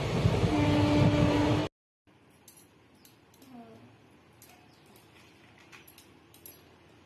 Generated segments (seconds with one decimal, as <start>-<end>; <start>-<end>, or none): none